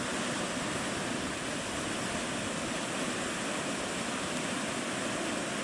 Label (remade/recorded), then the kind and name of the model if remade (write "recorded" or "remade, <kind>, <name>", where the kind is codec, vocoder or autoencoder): recorded